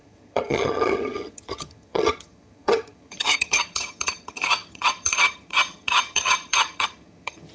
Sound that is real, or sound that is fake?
fake